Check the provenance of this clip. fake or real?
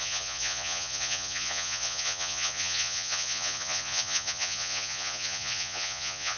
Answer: fake